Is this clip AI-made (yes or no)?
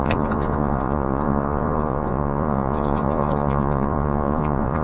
yes